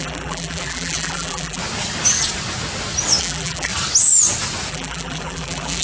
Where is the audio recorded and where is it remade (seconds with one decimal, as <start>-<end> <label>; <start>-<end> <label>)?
0.0-1.6 remade; 1.6-3.2 recorded; 3.2-3.7 remade; 3.7-4.7 recorded; 4.7-5.8 remade